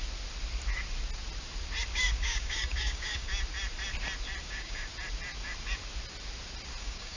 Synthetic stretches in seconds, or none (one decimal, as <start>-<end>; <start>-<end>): 1.9-3.3; 4.4-4.9; 6.8-7.2